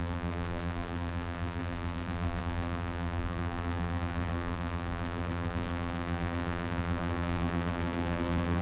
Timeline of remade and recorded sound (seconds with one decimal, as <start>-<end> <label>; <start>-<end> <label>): 0.0-8.6 remade